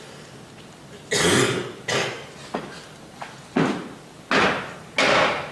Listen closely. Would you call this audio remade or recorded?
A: recorded